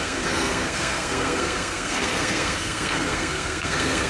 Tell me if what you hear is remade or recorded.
remade